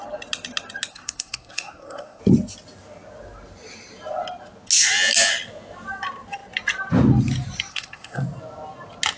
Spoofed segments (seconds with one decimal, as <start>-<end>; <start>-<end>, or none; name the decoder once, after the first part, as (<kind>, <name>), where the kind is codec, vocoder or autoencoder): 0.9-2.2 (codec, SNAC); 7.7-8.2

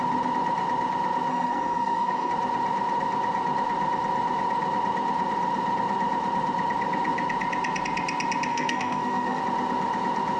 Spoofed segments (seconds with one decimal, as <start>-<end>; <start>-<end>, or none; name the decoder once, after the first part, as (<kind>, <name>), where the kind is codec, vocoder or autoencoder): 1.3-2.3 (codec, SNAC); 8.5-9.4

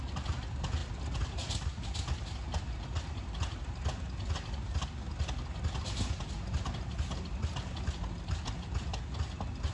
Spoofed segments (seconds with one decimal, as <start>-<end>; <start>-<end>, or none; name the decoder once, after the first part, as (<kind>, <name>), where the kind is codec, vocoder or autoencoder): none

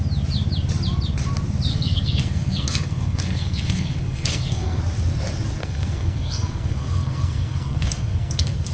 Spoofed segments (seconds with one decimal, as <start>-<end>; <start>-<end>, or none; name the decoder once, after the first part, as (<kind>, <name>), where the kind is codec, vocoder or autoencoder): 1.7-4.8 (codec, SNAC); 5.6-8.7

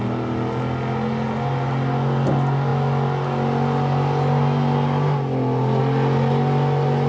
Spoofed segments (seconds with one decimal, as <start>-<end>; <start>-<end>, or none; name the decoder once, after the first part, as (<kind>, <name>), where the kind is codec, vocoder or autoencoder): none

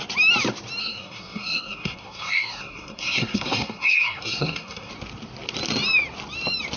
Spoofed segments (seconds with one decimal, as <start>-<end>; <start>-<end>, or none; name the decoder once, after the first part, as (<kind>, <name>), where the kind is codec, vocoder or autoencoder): 0.8-4.9 (codec, SNAC)

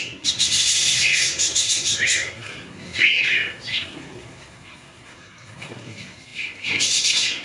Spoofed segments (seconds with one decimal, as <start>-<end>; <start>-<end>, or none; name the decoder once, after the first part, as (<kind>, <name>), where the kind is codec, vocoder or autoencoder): 0.0-7.4 (codec, SNAC)